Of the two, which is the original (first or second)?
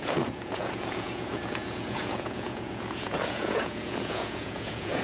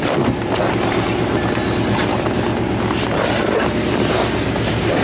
second